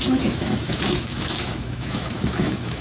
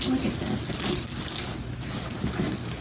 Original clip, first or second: second